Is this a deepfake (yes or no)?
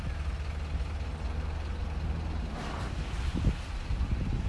no